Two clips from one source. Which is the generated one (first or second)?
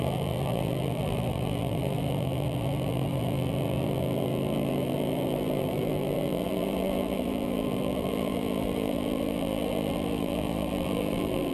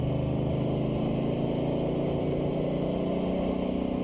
first